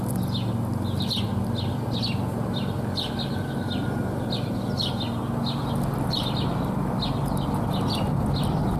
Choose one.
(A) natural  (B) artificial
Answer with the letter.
A